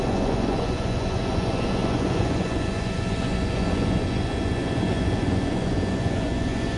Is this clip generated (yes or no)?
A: yes